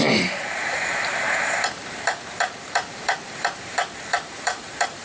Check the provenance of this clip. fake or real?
fake